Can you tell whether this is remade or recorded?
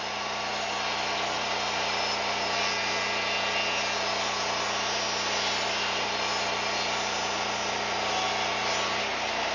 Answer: recorded